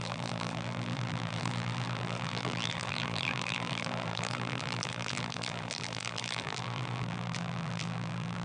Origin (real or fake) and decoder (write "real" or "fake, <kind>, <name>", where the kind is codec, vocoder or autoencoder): fake, vocoder, BigVGAN v2